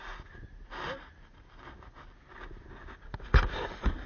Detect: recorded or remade recorded